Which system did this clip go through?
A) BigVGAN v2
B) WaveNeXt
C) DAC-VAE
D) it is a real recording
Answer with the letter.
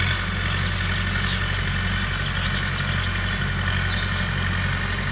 D